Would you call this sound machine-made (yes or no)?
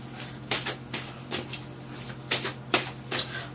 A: no